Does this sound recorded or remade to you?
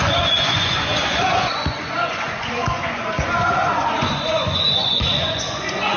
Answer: remade